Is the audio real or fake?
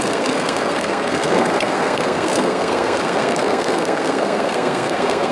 fake